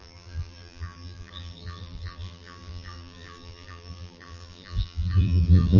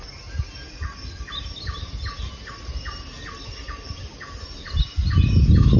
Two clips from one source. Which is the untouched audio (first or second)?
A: second